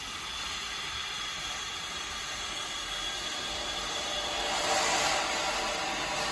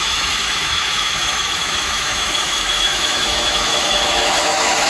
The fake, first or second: second